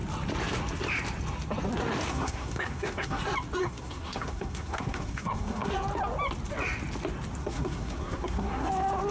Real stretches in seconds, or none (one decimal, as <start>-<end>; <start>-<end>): 0.0-2.1; 3.2-3.6; 5.7-7.4; 8.7-9.1